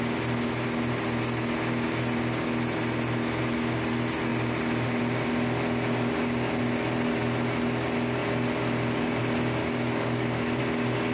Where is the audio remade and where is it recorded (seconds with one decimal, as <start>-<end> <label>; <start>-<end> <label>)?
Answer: 0.0-9.6 recorded; 9.6-10.6 remade; 10.6-11.1 recorded